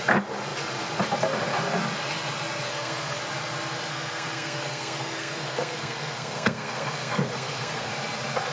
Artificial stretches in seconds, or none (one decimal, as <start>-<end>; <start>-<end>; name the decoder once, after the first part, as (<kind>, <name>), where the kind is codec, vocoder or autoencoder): 2.7-3.2 (codec, SNAC); 3.9-7.9